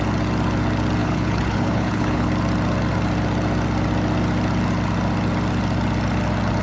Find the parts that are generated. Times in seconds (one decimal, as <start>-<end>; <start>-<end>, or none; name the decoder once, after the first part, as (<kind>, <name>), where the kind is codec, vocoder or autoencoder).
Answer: 1.0-2.3 (codec, HILCodec)